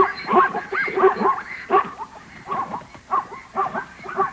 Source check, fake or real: fake